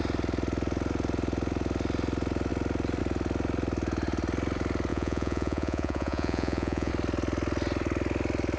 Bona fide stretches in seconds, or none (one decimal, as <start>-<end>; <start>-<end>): 0.0-4.9; 6.9-8.6